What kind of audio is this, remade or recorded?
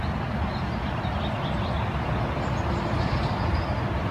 recorded